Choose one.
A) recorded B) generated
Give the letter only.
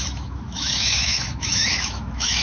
B